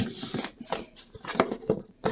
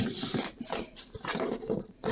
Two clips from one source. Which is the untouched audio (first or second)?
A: first